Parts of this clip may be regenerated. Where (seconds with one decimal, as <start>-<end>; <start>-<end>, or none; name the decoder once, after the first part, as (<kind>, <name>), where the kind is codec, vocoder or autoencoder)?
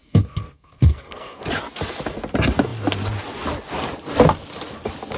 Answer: 0.0-1.4 (codec, SNAC)